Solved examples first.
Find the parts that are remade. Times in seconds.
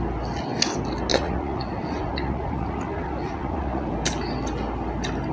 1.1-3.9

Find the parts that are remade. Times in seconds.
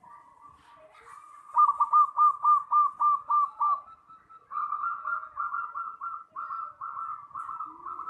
4.9-5.7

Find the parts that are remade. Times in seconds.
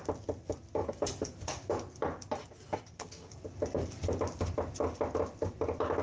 none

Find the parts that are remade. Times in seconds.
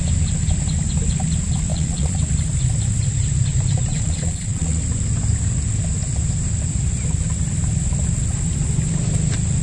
1.7-2.2; 3.9-4.8